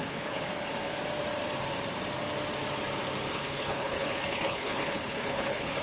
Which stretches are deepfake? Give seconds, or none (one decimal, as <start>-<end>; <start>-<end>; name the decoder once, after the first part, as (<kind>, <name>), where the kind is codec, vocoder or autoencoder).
0.0-0.5 (codec, HILCodec); 3.3-5.8